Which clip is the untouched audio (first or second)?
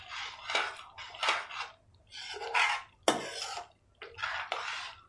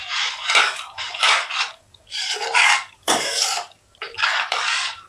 first